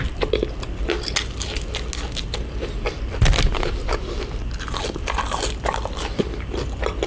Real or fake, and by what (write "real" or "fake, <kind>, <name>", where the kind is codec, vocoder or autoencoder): real